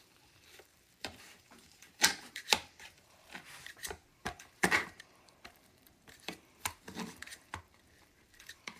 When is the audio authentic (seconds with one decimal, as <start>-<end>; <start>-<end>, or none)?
none